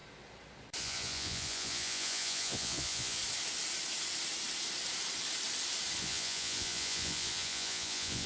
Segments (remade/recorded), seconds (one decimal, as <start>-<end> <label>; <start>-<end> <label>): 0.0-0.8 recorded; 0.8-3.2 remade; 3.2-6.0 recorded; 6.0-8.3 remade